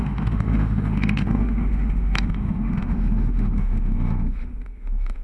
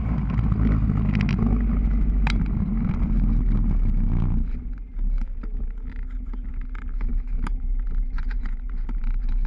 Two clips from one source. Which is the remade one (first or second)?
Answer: first